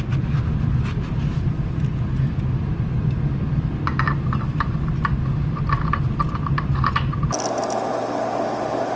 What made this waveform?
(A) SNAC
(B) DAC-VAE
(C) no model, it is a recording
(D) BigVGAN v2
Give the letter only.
C